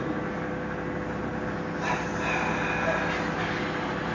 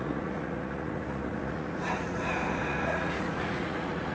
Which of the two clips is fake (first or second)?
second